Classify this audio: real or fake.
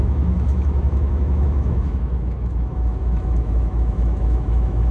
fake